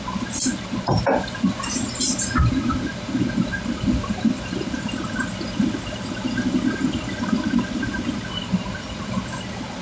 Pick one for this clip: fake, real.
fake